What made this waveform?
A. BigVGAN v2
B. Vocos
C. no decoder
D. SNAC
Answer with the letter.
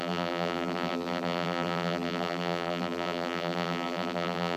A